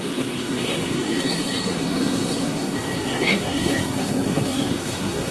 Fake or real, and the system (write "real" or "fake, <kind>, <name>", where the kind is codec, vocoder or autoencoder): fake, codec, SNAC